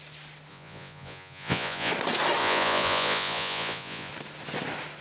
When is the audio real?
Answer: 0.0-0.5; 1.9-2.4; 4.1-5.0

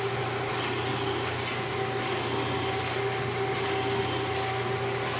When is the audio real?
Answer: 0.0-5.2

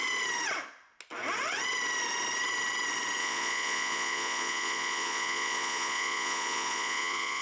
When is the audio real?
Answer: 0.0-3.2

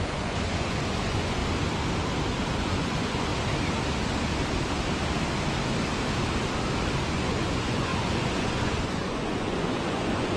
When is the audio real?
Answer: 1.4-2.5; 3.3-7.1

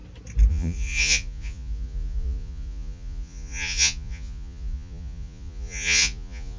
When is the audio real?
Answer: 0.0-0.5

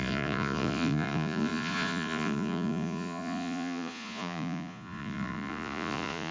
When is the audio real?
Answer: none

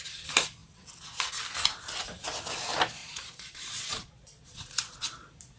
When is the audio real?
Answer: 0.0-3.0

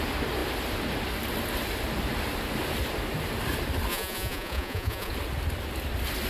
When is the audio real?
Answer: 0.0-3.9; 5.1-6.3